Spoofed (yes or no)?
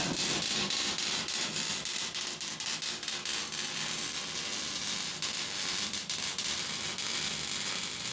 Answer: yes